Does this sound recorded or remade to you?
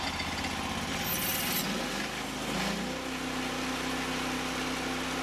recorded